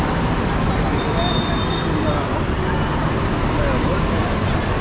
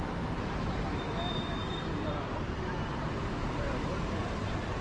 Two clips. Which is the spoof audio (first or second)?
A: second